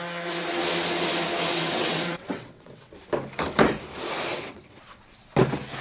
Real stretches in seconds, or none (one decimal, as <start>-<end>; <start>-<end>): 0.0-1.5; 2.9-4.3; 5.0-5.8